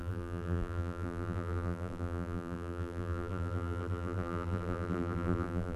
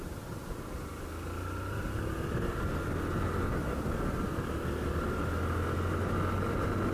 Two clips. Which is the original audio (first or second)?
second